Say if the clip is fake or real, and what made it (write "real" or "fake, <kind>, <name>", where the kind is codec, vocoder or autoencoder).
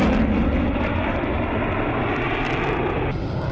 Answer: real